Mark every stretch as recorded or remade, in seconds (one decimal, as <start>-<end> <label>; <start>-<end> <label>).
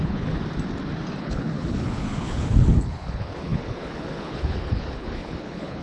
0.0-0.4 remade; 0.4-1.2 recorded; 1.2-5.8 remade